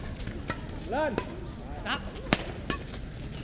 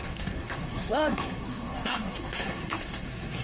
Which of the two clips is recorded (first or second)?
first